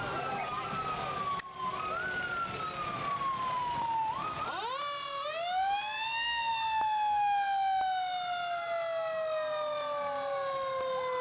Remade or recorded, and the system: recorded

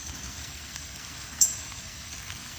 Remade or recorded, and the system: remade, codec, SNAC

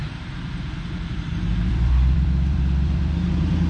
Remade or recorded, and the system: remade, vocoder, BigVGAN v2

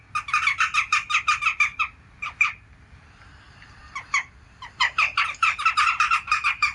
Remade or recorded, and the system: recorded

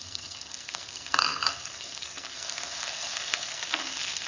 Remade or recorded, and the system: remade, codec, SNAC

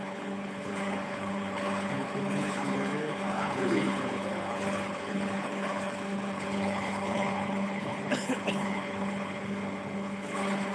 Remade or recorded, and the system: remade, codec, HILCodec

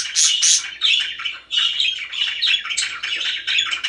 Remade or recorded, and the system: recorded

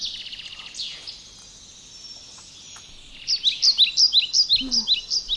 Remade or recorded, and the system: recorded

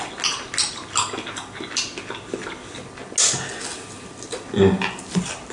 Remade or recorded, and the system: recorded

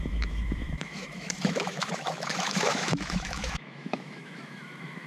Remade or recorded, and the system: remade, autoencoder, DAC-VAE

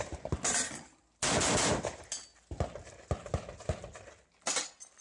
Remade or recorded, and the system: recorded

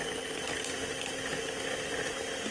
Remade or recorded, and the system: recorded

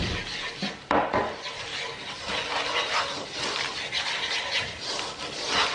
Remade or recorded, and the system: recorded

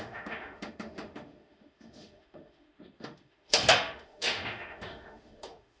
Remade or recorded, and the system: remade, autoencoder, DAC-VAE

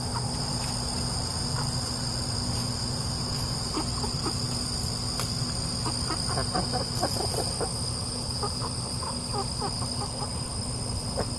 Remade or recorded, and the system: recorded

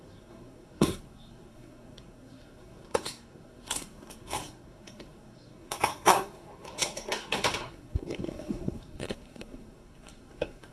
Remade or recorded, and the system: remade, codec, SNAC